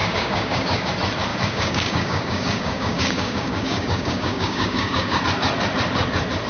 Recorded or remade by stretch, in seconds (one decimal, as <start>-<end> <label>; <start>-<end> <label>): 0.0-0.9 remade; 0.9-1.3 recorded; 1.3-5.2 remade; 5.2-6.5 recorded